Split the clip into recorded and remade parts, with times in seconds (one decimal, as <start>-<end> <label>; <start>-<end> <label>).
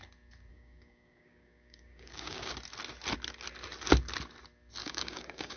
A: 0.0-0.5 recorded; 0.5-2.5 remade; 2.5-4.8 recorded; 4.8-5.6 remade